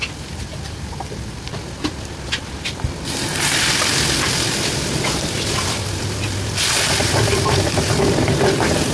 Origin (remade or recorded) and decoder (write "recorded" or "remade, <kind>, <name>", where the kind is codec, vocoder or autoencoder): remade, vocoder, BigVGAN v2